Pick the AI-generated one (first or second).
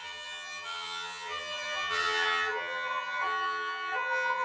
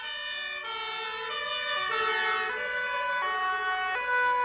first